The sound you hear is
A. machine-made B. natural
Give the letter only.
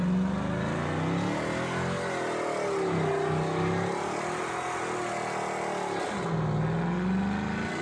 B